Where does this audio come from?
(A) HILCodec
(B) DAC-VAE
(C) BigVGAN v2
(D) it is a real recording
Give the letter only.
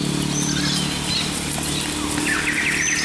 D